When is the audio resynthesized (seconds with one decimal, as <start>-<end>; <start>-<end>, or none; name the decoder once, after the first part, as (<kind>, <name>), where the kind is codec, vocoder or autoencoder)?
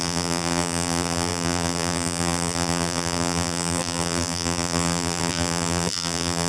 0.0-6.5 (vocoder, BigVGAN v2)